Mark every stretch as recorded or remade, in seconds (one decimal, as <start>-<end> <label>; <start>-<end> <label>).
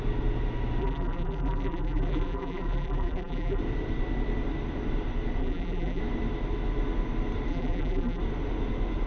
0.0-0.8 recorded; 0.8-3.6 remade; 3.6-5.4 recorded; 5.4-6.0 remade; 6.0-7.5 recorded; 7.5-8.2 remade; 8.2-9.1 recorded